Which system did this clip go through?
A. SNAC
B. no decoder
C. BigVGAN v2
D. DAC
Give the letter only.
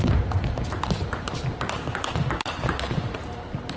C